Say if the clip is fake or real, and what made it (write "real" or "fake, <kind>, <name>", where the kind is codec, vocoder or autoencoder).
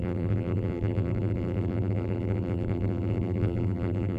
fake, vocoder, BigVGAN v2